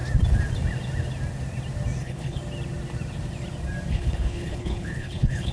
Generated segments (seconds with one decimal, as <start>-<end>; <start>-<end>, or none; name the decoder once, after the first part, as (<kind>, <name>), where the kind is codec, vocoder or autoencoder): 2.0-2.4 (codec, HILCodec); 3.9-5.5